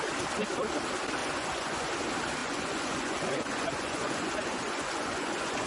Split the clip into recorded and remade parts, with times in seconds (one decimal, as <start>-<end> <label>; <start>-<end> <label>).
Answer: 0.0-1.2 recorded; 1.2-1.9 remade; 1.9-2.4 recorded; 2.4-5.7 remade